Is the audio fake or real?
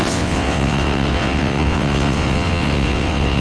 fake